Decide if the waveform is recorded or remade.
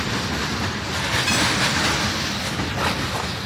recorded